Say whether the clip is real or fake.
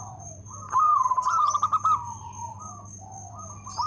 fake